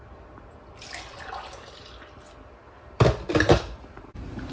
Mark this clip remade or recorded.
recorded